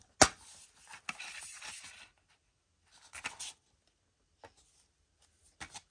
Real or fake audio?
real